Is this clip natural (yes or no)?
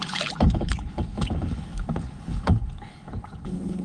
no